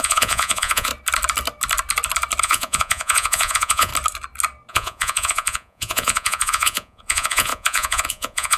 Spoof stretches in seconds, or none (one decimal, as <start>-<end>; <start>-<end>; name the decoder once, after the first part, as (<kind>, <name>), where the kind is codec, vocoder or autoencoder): 0.0-0.9 (vocoder, Vocos); 2.4-3.9; 4.7-8.6